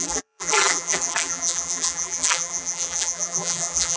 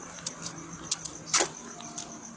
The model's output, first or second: first